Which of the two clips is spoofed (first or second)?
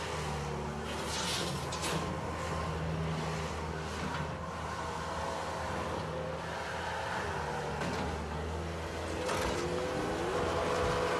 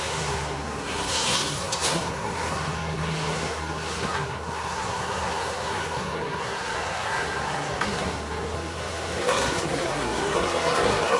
second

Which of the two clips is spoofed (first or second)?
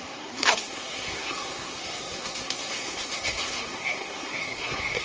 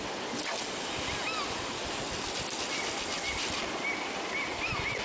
first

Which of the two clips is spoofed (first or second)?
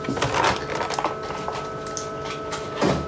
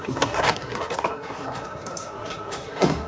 second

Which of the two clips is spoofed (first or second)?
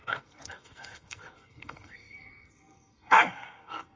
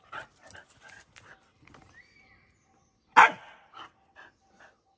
first